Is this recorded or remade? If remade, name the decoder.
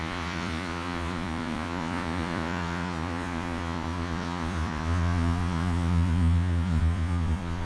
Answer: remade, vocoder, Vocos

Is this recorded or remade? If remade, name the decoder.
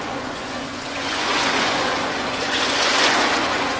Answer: remade, vocoder, Vocos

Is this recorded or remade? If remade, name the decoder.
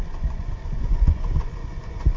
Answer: remade, vocoder, Vocos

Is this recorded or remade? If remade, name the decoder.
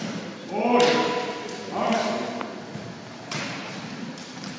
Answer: recorded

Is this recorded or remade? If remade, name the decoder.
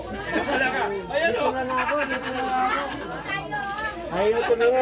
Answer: recorded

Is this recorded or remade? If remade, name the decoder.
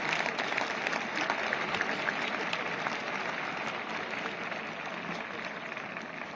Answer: recorded